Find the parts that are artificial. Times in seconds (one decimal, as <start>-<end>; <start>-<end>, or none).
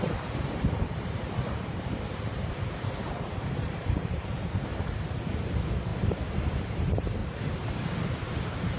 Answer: 0.0-7.2; 8.4-8.8